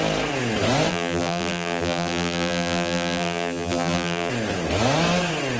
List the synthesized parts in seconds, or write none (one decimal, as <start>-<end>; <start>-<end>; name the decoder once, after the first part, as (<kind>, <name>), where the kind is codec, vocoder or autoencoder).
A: 0.9-4.3 (vocoder, BigVGAN v2)